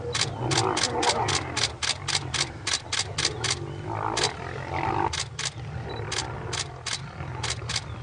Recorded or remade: recorded